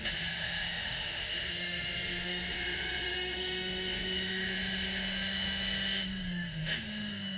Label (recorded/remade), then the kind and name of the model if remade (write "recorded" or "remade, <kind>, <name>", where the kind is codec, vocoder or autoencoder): remade, autoencoder, DAC-VAE